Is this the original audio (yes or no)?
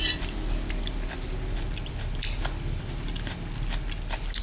yes